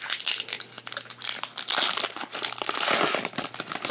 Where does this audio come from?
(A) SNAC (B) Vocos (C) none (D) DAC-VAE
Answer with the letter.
C